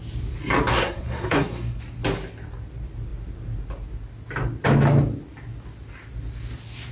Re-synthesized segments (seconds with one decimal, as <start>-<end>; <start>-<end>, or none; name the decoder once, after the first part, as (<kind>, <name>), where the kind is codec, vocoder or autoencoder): 0.7-1.8 (codec, SNAC)